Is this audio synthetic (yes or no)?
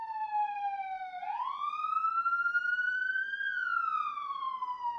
no